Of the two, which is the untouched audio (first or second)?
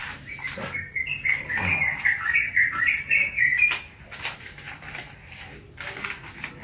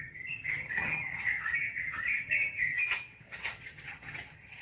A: first